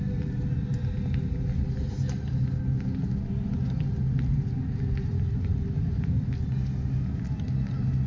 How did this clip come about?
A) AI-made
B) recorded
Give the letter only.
B